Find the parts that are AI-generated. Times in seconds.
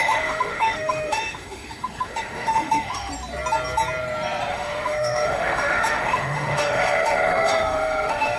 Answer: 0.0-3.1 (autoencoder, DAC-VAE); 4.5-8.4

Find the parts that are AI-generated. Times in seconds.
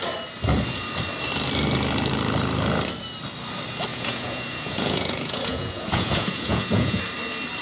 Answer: 3.9-7.0 (vocoder, Vocos)